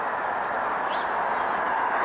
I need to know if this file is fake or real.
real